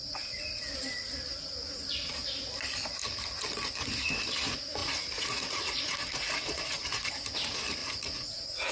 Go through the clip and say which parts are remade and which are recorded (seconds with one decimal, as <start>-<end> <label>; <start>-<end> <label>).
0.0-0.6 remade; 0.6-4.8 recorded; 4.8-7.1 remade; 7.1-7.8 recorded; 7.8-8.7 remade

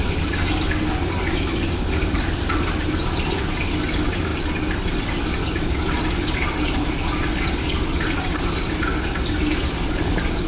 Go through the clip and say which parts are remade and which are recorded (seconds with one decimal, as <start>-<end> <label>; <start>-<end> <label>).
0.0-10.5 recorded

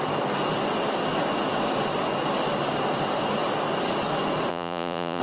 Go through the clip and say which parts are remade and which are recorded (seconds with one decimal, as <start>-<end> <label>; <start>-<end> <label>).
0.0-4.5 recorded; 4.5-5.2 remade

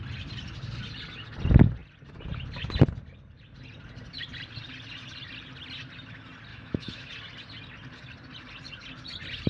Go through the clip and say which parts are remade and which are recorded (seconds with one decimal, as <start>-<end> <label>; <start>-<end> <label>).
0.0-6.5 recorded; 6.5-7.1 remade; 7.1-9.5 recorded